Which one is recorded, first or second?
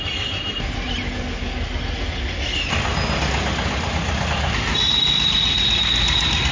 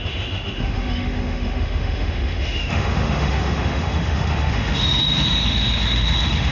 first